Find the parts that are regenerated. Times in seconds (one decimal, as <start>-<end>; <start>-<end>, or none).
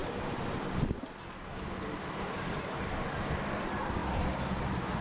none